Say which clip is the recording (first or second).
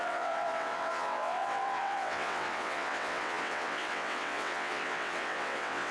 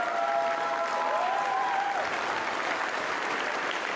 second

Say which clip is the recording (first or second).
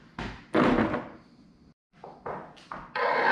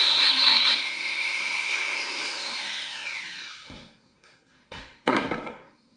first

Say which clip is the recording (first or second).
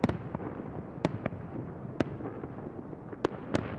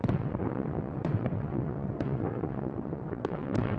first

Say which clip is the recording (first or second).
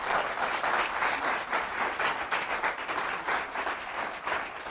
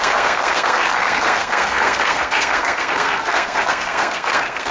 first